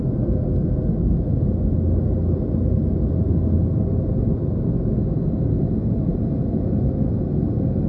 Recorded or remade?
recorded